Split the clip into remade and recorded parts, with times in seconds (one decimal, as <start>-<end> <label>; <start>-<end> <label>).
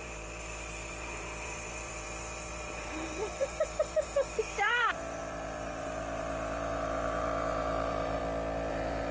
0.0-8.2 remade; 8.2-8.7 recorded; 8.7-9.1 remade